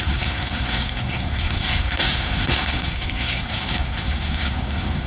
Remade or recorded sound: remade